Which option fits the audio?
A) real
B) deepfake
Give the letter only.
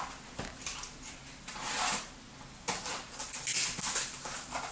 A